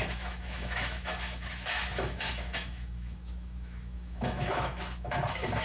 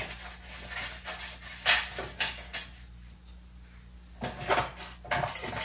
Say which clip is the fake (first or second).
first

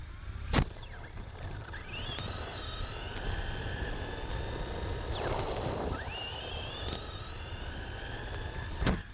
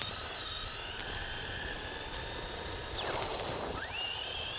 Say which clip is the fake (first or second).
second